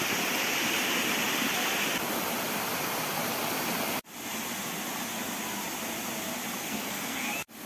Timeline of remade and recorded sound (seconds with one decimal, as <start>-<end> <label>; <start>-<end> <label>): 0.0-6.6 recorded; 6.6-7.3 remade; 7.3-7.7 recorded